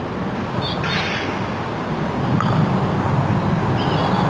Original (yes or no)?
yes